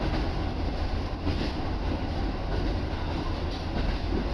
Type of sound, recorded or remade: recorded